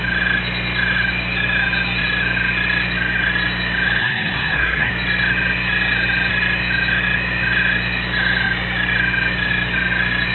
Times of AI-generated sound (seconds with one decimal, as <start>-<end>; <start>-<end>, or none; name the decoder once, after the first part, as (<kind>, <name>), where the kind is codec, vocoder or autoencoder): 4.0-4.9 (codec, SNAC)